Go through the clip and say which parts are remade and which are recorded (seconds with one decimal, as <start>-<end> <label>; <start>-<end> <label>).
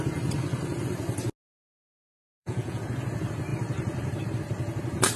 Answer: 0.0-1.9 recorded; 1.9-2.8 remade; 2.8-5.2 recorded